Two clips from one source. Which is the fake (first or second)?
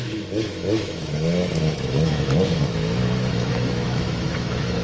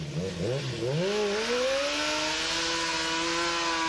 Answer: first